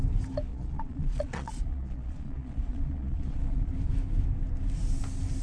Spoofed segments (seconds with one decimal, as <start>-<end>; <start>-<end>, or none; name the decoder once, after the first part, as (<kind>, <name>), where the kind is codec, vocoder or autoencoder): 0.5-3.7 (vocoder, Vocos)